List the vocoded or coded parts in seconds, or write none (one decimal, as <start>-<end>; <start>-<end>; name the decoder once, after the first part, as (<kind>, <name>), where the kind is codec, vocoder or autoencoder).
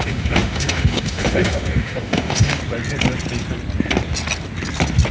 0.0-2.6 (autoencoder, DAC-VAE)